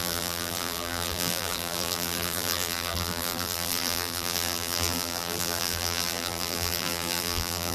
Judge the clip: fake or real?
fake